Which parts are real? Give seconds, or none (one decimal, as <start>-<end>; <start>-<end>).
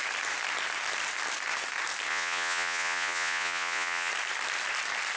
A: 0.0-2.1; 4.1-5.2